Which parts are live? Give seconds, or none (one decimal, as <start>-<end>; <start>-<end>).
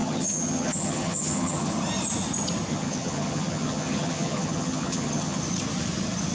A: 1.7-2.7; 5.4-6.3